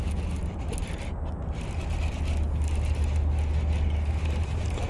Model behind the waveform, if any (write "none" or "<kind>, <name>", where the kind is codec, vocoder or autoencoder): none